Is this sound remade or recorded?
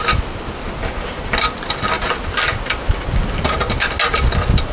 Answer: recorded